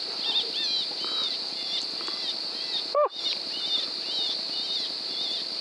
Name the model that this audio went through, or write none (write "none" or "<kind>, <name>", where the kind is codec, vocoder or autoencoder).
none